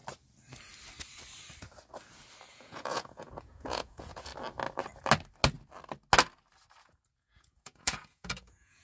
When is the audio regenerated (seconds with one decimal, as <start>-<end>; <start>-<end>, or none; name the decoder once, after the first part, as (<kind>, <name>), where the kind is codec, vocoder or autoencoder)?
2.5-4.3 (vocoder, Vocos); 6.8-8.8